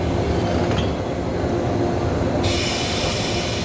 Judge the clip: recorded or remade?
recorded